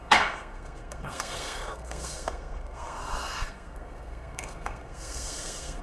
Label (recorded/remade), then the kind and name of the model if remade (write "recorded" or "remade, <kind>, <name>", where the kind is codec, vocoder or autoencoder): remade, codec, SNAC